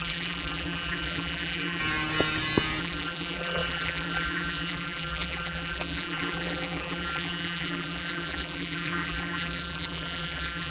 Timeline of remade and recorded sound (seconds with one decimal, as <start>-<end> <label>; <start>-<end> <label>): 0.0-1.8 remade; 1.8-2.8 recorded; 2.8-10.7 remade

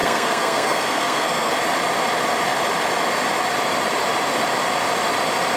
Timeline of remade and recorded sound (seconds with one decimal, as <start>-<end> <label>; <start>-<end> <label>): 0.0-1.5 remade; 1.5-5.6 recorded

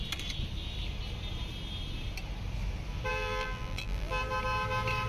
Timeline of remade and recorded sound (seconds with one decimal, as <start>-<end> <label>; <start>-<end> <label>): 0.0-3.1 recorded; 3.1-4.2 remade; 4.2-5.1 recorded